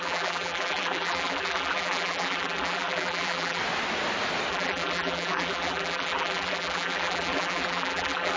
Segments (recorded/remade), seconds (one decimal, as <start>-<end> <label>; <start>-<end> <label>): 0.0-3.6 remade; 3.6-4.5 recorded; 4.5-8.4 remade